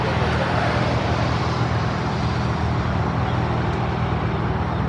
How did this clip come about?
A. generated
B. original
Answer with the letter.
B